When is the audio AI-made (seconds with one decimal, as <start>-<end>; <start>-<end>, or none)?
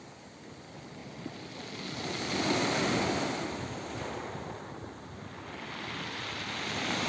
none